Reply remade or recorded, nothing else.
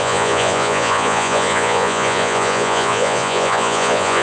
remade